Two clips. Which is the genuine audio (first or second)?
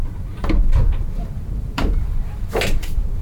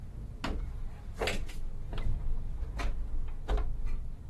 second